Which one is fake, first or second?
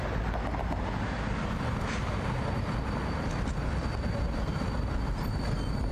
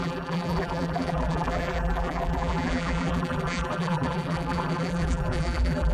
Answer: second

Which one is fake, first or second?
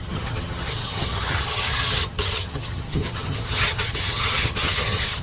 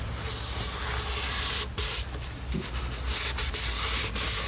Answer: first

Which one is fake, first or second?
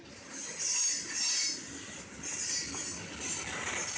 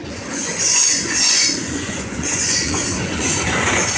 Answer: second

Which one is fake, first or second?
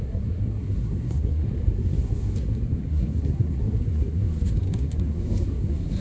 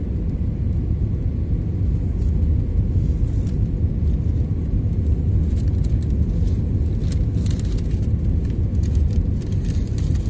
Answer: first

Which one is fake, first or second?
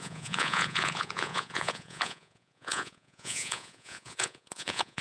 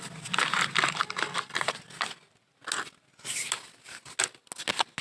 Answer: first